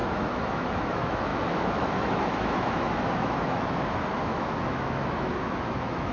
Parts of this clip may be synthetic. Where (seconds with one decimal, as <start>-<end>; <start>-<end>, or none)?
0.0-6.1

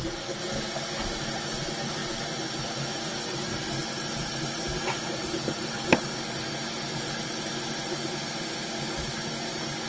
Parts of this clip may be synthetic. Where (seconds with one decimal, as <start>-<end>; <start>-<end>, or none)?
none

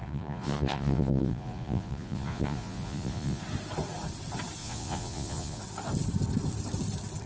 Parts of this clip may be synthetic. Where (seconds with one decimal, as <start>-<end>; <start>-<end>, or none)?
0.0-3.4; 4.6-5.6

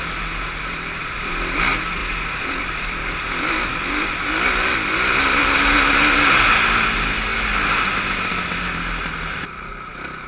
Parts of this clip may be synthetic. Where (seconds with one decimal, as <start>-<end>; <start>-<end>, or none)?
none

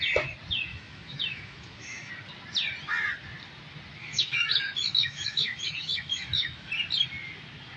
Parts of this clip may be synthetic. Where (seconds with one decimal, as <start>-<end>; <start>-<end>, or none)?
0.7-2.1; 4.0-6.7